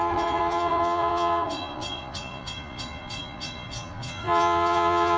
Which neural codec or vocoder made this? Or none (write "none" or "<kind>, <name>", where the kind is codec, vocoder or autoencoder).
vocoder, Vocos